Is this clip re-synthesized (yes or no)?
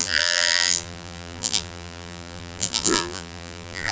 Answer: yes